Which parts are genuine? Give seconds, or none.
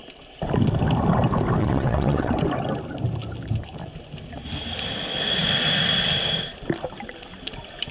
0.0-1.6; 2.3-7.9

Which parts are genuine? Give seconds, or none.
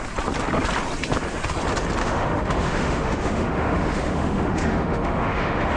0.0-2.0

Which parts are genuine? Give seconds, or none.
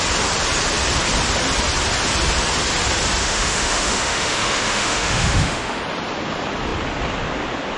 0.0-3.2; 5.8-7.8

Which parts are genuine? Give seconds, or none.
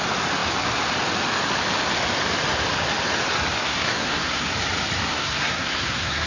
0.0-3.6; 4.5-5.1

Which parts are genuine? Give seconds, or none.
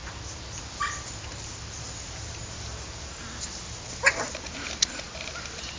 0.0-5.8